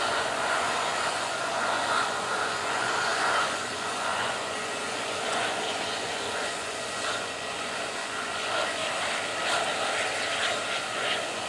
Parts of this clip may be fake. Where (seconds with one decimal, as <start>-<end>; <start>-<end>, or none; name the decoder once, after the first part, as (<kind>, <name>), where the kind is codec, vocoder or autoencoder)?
0.0-8.8 (vocoder, Vocos); 10.7-11.5